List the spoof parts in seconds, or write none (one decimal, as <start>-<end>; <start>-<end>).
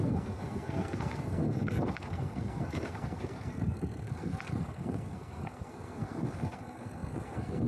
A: 0.0-7.7